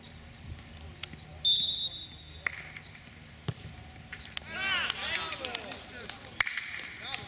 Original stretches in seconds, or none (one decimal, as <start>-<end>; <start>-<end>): 0.0-7.3